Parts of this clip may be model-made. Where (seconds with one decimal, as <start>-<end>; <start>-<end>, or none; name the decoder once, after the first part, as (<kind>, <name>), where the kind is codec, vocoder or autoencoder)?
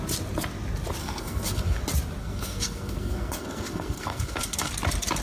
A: 1.0-1.8 (codec, SNAC); 2.2-4.7